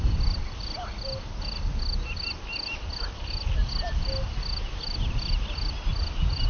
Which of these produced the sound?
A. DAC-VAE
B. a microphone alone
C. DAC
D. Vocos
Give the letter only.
B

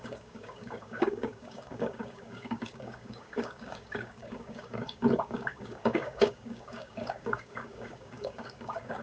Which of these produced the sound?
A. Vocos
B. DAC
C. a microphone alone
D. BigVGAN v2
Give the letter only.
B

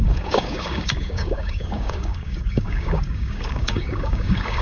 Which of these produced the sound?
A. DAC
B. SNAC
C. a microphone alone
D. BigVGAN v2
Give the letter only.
A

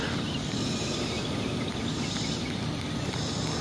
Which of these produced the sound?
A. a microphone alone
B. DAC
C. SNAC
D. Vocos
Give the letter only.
A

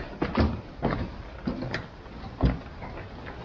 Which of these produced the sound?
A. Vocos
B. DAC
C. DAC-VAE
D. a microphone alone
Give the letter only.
D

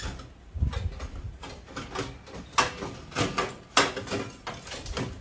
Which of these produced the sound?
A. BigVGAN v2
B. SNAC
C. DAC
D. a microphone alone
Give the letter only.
D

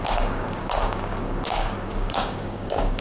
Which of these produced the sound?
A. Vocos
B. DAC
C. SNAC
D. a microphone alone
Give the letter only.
B